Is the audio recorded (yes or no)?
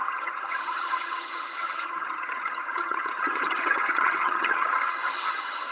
no